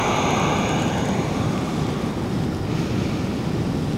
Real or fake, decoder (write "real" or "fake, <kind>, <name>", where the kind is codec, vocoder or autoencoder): real